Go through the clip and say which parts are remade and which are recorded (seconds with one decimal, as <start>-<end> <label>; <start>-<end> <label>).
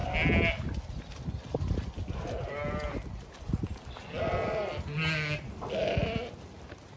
0.0-7.0 recorded